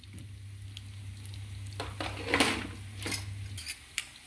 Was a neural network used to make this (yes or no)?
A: no